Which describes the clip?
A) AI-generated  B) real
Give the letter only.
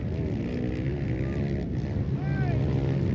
B